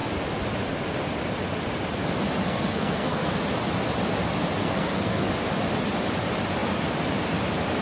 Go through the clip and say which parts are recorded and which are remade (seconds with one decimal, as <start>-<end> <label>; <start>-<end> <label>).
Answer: 0.0-2.4 recorded; 2.4-3.3 remade; 3.3-4.6 recorded; 4.6-5.3 remade; 5.3-7.8 recorded